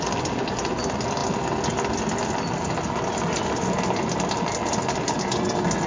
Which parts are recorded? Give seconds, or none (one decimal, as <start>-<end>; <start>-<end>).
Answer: 0.0-5.9